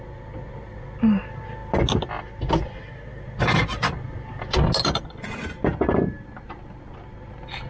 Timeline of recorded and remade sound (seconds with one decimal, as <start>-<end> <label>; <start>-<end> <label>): 0.0-7.7 recorded